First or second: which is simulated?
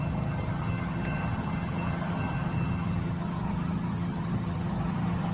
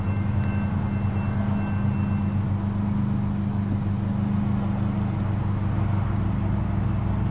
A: first